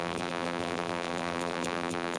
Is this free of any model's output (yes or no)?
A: no